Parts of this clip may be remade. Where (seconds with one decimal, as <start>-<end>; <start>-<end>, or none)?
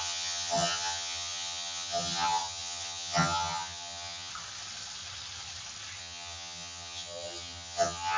0.0-4.3; 6.0-8.2